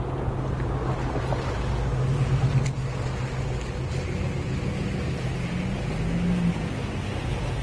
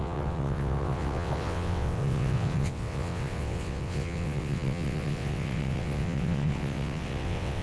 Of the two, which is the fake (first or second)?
second